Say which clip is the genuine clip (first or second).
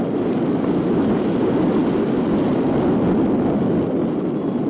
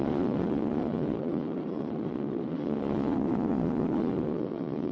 first